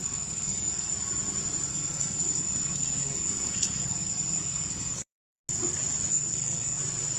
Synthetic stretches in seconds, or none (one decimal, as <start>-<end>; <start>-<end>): 0.0-0.9; 1.7-5.4; 6.1-6.8